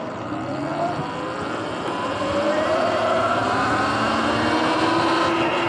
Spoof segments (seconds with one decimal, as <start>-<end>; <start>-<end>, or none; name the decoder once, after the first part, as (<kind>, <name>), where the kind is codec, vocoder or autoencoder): none